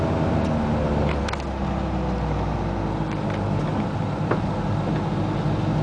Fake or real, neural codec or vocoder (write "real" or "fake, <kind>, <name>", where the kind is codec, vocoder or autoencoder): real